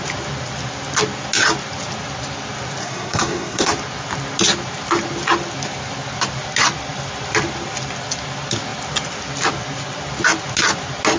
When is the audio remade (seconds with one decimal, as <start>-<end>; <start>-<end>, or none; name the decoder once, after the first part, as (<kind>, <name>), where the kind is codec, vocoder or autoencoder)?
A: 2.8-3.7 (codec, SNAC)